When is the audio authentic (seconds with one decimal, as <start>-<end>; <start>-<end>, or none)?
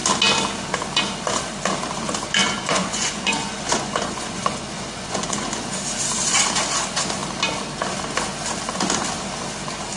0.0-2.4; 5.7-10.0